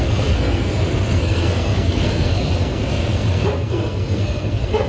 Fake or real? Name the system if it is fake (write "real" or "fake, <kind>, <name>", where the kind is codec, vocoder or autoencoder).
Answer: fake, codec, SNAC